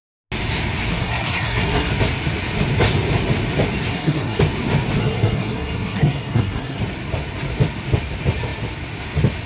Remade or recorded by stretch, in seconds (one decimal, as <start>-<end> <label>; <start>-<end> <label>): 0.0-0.9 recorded; 0.9-1.9 remade; 1.9-3.9 recorded; 3.9-4.4 remade; 4.4-5.0 recorded; 5.0-6.8 remade; 6.8-9.5 recorded